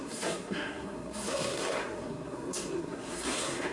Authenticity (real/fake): fake